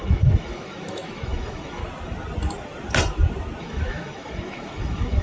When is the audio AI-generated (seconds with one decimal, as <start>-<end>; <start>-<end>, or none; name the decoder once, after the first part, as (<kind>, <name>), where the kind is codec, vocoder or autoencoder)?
0.0-1.8 (autoencoder, DAC-VAE); 3.6-5.2